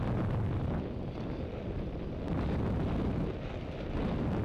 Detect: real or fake real